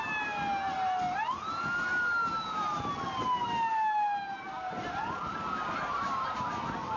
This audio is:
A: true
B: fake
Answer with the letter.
A